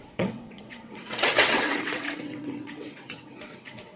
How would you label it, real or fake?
fake